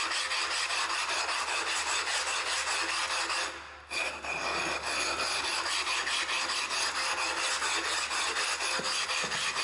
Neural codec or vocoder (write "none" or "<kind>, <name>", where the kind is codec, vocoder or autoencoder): none